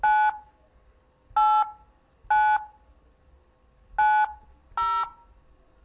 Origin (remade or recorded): recorded